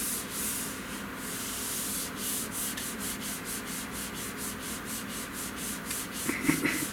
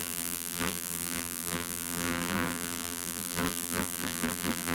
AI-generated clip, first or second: second